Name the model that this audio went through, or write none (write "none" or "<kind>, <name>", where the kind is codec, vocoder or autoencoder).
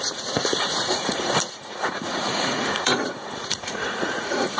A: vocoder, Vocos